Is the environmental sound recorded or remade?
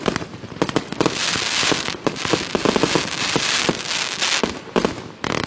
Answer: recorded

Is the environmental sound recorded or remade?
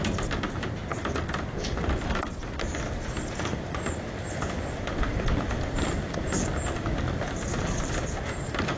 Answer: recorded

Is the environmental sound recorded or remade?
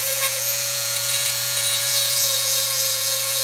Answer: remade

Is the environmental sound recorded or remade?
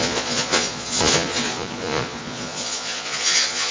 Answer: remade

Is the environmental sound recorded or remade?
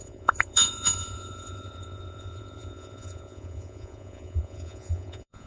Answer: remade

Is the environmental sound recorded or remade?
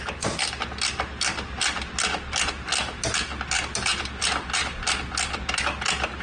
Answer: recorded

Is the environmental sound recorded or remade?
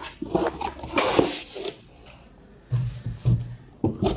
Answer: recorded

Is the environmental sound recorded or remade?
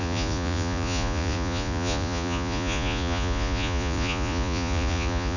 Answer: remade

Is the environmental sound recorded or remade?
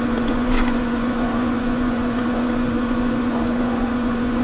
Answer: remade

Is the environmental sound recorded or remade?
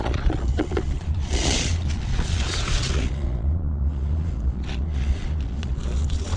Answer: remade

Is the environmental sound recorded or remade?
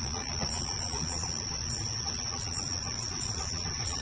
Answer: remade